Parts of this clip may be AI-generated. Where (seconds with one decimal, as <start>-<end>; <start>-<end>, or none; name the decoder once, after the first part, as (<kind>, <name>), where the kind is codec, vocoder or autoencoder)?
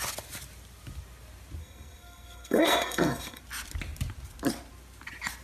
1.6-3.4 (codec, SNAC)